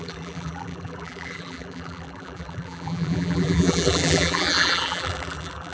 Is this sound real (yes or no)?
no